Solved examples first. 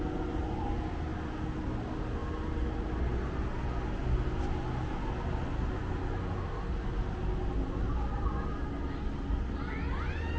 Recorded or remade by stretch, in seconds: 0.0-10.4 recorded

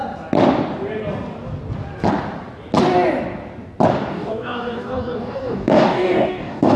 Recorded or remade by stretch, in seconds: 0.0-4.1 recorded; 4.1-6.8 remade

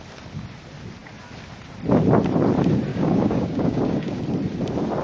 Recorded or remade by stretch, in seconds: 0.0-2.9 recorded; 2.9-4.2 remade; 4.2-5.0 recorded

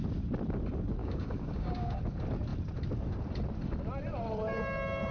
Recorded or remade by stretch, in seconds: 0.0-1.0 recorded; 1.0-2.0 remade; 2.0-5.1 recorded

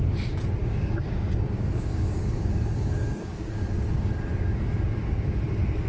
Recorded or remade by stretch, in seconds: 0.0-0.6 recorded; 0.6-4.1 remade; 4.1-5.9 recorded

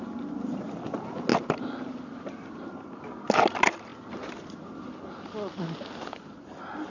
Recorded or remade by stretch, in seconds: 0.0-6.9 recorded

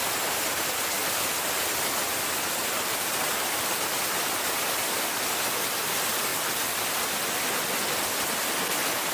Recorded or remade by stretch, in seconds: 0.0-9.1 recorded

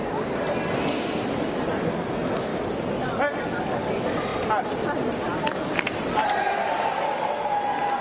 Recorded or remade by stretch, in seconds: 0.0-8.0 recorded